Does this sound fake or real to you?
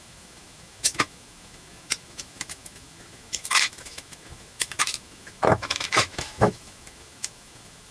fake